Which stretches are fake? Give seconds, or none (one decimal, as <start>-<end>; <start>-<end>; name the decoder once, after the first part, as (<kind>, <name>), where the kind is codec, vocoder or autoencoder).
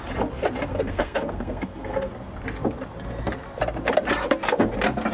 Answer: 0.7-2.1 (codec, SNAC)